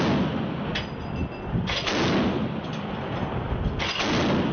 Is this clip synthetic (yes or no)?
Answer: no